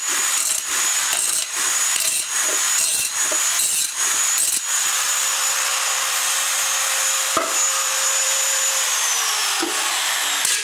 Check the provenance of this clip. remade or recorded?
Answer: recorded